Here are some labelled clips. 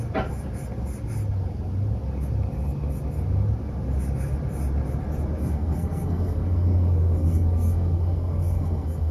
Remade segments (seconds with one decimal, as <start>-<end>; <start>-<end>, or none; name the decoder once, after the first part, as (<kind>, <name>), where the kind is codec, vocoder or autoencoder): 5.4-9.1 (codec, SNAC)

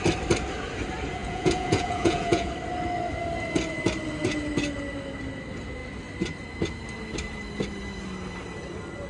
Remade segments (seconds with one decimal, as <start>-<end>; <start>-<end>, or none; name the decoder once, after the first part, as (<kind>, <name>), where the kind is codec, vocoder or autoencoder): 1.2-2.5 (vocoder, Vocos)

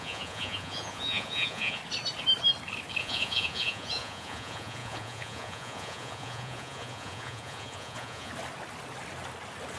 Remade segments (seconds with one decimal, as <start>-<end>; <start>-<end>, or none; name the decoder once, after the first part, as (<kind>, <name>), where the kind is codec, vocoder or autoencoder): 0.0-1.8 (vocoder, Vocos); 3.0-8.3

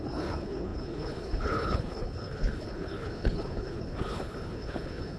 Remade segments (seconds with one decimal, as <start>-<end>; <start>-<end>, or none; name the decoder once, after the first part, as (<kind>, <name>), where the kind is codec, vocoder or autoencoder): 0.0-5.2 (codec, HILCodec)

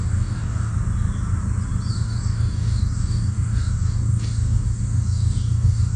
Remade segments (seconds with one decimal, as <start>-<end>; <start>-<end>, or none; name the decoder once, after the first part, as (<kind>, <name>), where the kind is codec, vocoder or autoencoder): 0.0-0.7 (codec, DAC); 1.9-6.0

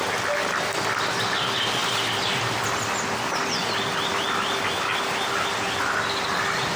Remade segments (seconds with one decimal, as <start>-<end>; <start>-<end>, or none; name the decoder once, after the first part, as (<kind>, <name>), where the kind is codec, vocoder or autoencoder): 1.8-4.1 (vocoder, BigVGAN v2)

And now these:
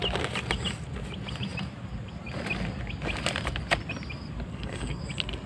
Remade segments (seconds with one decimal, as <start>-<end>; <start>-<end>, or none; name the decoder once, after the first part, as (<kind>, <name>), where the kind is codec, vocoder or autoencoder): 4.5-5.0 (codec, SNAC)

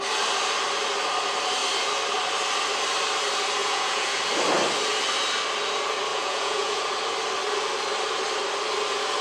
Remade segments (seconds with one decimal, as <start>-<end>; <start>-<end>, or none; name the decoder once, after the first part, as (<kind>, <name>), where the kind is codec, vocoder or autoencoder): 3.6-4.2 (vocoder, Vocos); 6.1-6.9